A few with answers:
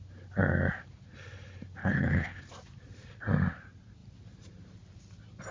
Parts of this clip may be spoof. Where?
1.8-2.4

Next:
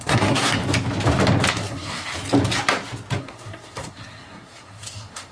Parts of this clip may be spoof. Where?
0.0-0.6; 1.5-2.1; 3.2-5.3

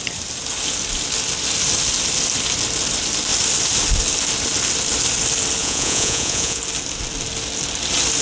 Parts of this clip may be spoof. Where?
5.6-6.6

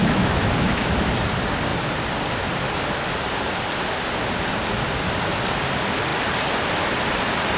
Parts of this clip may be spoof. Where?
0.0-0.9